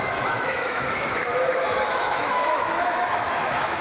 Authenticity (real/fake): fake